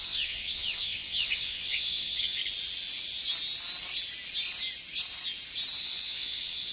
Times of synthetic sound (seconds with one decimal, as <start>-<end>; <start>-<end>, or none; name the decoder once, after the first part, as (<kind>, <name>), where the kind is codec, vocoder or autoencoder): 0.0-2.4 (vocoder, WaveNeXt); 5.8-6.7